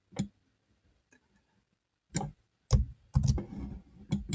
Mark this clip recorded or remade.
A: recorded